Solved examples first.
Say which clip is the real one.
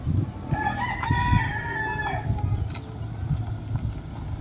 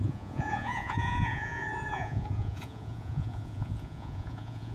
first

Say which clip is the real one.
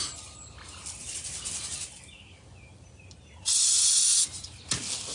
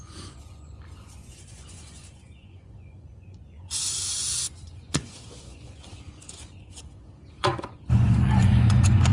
first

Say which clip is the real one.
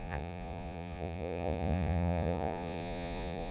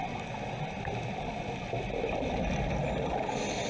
second